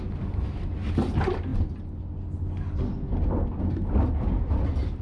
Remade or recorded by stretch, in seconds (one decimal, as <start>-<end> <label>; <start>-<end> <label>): 0.0-5.0 recorded